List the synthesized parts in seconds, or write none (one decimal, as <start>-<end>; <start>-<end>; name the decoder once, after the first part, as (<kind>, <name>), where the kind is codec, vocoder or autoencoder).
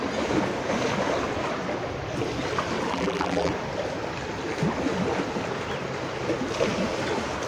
2.9-3.5 (vocoder, BigVGAN v2)